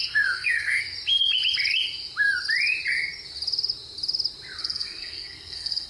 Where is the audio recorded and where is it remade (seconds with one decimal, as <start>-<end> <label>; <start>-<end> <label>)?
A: 0.0-0.8 remade; 0.8-4.6 recorded; 4.6-5.9 remade